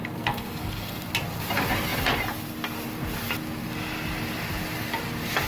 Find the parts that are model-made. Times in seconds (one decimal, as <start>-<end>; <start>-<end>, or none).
0.0-1.1

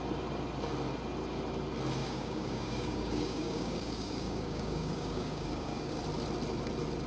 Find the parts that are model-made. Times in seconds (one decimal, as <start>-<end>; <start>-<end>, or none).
2.0-6.0

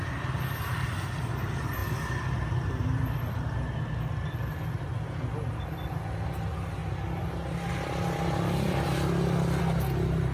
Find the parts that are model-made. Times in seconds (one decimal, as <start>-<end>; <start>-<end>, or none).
none

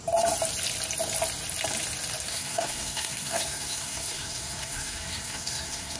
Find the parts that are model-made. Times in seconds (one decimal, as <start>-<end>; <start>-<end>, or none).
2.3-6.0

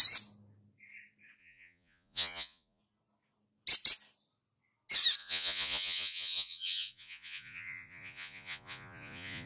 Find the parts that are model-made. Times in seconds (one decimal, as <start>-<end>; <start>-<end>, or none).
1.4-2.8; 5.2-9.5

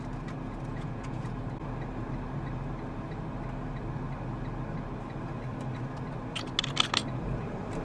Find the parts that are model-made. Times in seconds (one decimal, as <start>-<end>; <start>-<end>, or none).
0.7-1.3